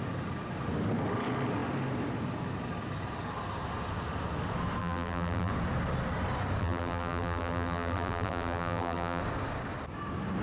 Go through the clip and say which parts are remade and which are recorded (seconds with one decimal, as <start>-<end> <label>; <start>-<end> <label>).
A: 0.0-4.8 recorded; 4.8-5.5 remade; 5.5-6.6 recorded; 6.6-9.2 remade; 9.2-10.4 recorded